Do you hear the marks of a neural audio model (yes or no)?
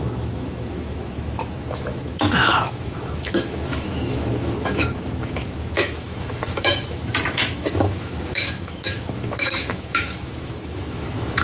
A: yes